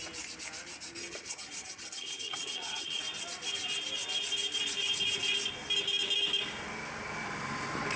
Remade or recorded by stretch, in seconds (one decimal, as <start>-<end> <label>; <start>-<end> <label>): 0.0-1.0 recorded; 1.0-3.0 remade; 3.0-8.0 recorded